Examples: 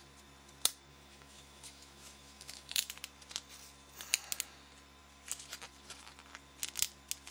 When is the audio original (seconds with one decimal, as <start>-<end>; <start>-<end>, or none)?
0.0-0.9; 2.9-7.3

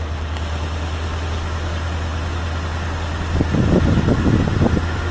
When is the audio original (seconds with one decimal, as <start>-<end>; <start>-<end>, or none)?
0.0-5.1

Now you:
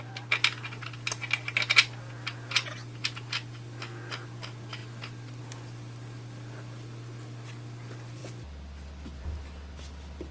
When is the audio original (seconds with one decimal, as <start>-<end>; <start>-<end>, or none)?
0.0-4.8; 5.4-10.3

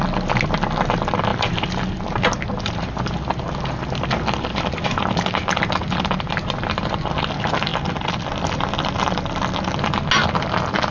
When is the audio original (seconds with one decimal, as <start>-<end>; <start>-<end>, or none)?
0.0-10.9

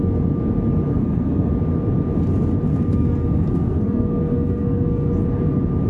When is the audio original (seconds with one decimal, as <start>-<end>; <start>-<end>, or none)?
0.0-0.9; 1.5-2.7; 5.1-5.9